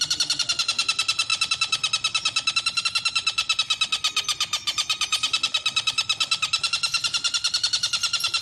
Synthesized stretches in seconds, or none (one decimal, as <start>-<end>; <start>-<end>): none